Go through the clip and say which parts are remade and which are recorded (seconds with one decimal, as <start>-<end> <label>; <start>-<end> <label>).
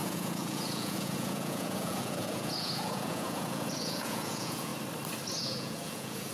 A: 0.0-4.7 remade; 4.7-5.4 recorded; 5.4-6.3 remade